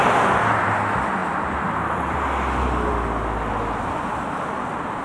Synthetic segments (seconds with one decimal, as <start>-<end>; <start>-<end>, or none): none